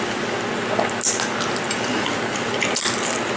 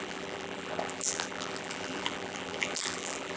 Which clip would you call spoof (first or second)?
second